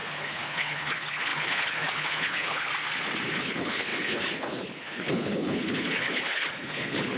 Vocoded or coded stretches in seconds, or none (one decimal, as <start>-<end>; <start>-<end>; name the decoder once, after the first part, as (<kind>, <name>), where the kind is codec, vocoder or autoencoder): 0.0-2.7 (codec, HILCodec); 3.4-7.2